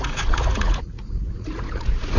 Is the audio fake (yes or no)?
yes